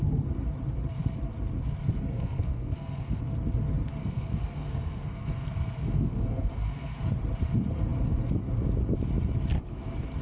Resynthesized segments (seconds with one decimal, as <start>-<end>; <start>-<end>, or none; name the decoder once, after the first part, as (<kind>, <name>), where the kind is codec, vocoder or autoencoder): 2.1-3.2 (codec, SNAC); 4.0-7.0